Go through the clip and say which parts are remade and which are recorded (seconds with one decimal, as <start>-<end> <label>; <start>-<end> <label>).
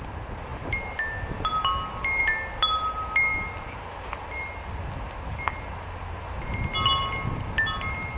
0.0-8.2 recorded